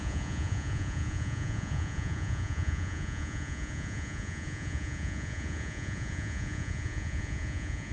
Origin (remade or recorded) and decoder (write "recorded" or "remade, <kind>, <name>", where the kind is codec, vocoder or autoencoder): remade, vocoder, Vocos